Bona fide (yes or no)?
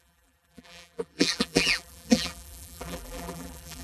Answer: no